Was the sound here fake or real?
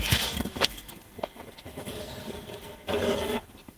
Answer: fake